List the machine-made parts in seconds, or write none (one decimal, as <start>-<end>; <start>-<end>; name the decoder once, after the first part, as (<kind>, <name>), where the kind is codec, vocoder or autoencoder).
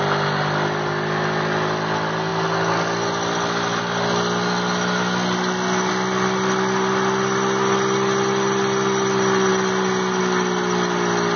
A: none